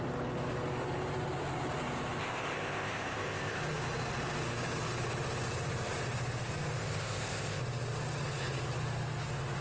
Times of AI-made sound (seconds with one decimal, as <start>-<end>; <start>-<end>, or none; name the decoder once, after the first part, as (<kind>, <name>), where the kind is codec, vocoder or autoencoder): 2.2-3.6 (codec, ZipCodec); 6.8-7.6